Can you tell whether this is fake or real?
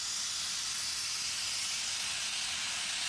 real